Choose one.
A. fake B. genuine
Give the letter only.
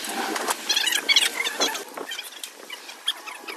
B